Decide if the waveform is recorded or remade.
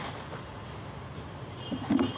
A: recorded